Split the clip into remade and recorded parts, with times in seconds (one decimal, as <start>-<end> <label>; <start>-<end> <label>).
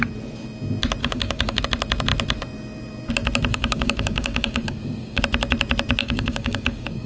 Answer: 0.0-1.0 recorded; 1.0-1.6 remade; 1.6-3.5 recorded; 3.5-5.2 remade; 5.2-6.0 recorded; 6.0-7.1 remade